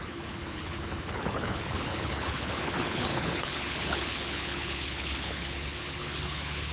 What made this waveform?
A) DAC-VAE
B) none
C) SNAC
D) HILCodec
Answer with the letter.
D